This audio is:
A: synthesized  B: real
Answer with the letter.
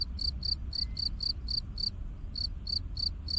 B